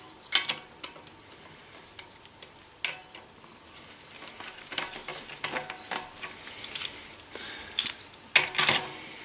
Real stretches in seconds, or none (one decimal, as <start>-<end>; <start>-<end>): 0.0-9.2